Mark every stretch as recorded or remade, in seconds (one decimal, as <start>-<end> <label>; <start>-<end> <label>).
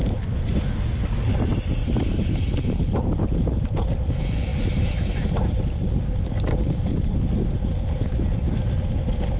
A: 0.0-1.8 recorded; 1.8-4.1 remade; 4.1-4.5 recorded; 4.5-7.2 remade; 7.2-9.4 recorded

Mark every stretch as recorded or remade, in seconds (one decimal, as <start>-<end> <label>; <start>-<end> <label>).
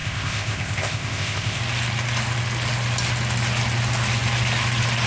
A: 0.0-1.6 remade; 1.6-5.1 recorded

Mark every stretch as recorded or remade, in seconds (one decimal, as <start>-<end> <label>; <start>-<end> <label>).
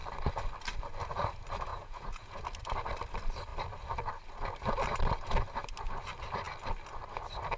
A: 0.0-1.7 recorded; 1.7-2.4 remade; 2.4-7.6 recorded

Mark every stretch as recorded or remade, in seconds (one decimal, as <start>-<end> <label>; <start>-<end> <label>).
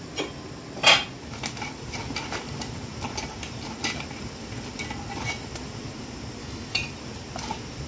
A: 0.0-6.4 recorded; 6.4-6.9 remade; 6.9-7.9 recorded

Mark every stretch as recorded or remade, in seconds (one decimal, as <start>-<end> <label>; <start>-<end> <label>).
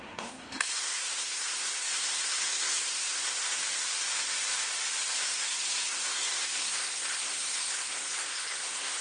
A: 0.0-3.6 remade; 3.6-5.2 recorded; 5.2-9.0 remade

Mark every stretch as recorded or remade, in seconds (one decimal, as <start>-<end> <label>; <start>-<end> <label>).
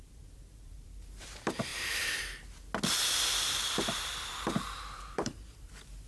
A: 0.0-1.7 remade; 1.7-4.3 recorded; 4.3-6.1 remade